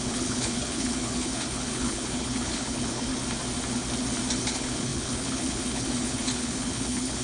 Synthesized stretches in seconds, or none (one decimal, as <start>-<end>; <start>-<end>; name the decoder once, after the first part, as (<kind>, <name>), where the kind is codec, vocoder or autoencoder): 0.0-3.1 (codec, HILCodec); 4.4-7.2